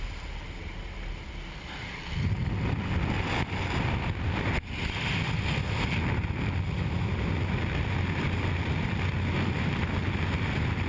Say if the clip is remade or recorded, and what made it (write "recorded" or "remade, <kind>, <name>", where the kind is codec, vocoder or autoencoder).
recorded